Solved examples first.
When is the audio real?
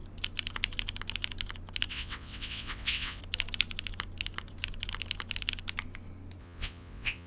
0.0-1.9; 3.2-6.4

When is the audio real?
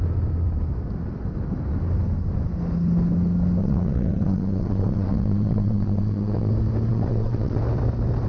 0.0-3.6; 6.5-6.9; 7.6-8.3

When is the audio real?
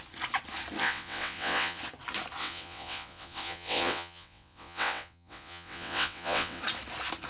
0.0-0.8; 1.8-2.4; 6.6-7.3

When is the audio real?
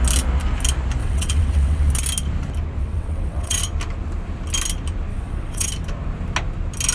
0.0-1.0; 1.9-2.8; 3.6-5.1; 5.7-6.9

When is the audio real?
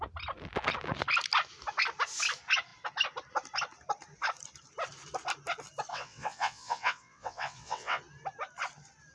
0.0-5.9; 8.0-9.1